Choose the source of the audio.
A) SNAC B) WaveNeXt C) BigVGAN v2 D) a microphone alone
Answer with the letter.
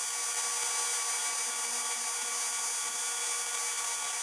D